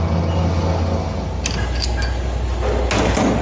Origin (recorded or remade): recorded